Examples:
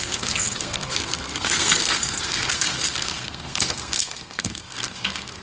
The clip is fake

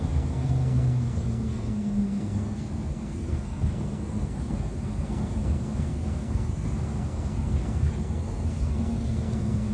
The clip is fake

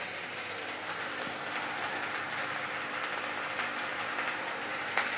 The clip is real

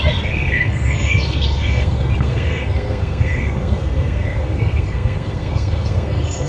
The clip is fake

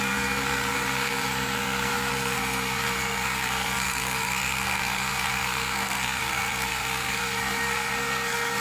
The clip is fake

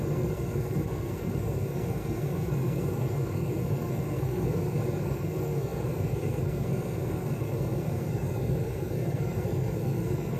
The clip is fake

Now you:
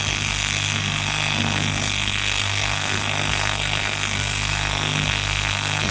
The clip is fake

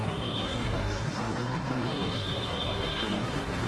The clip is fake